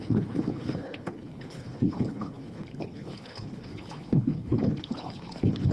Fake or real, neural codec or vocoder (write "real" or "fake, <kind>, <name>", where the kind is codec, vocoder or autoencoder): fake, codec, HILCodec